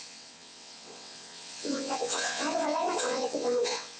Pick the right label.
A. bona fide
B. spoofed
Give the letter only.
B